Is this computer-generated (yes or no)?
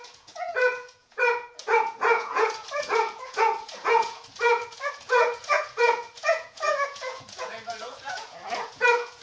yes